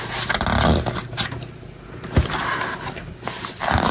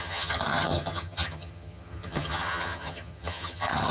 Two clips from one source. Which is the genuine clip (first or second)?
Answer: first